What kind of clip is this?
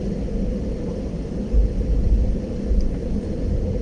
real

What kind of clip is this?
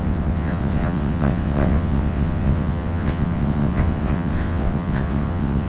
fake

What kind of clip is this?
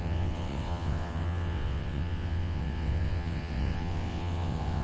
fake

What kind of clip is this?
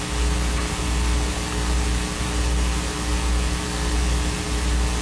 real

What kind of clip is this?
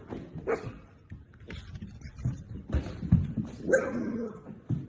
real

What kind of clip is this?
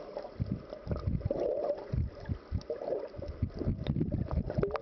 real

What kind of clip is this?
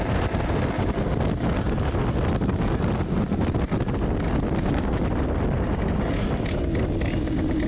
real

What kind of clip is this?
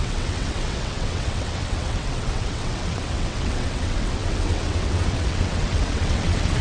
fake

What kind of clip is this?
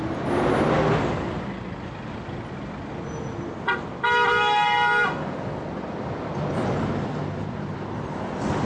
real